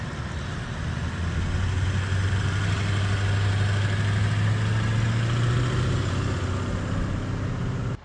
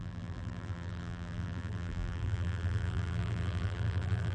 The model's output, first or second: second